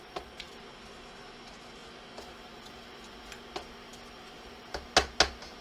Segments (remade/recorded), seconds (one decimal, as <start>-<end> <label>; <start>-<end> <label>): 0.0-5.6 recorded